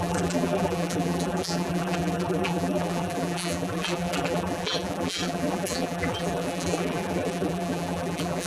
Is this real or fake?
fake